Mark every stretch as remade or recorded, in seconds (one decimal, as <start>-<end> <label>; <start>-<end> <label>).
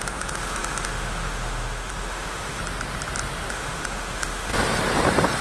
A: 0.0-2.6 remade; 2.6-3.5 recorded; 3.5-4.5 remade; 4.5-5.4 recorded